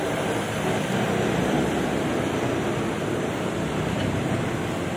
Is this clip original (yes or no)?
yes